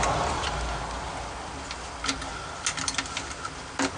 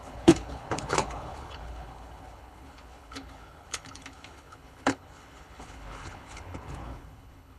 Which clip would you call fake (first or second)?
second